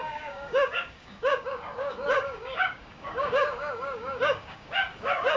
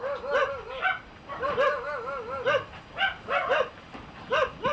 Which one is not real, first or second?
first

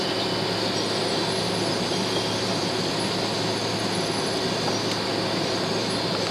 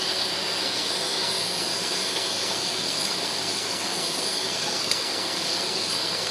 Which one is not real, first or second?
second